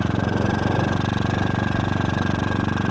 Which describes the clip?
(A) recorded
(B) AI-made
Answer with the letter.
B